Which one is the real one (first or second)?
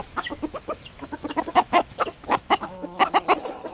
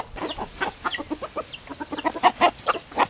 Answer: second